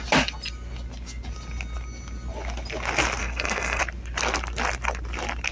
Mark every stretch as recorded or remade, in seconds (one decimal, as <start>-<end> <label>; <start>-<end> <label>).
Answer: 0.0-3.2 recorded; 3.2-3.8 remade; 3.8-5.5 recorded